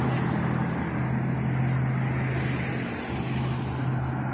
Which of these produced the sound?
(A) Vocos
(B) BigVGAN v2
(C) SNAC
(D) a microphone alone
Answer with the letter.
D